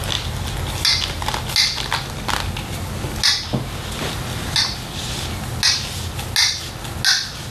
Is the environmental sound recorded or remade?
recorded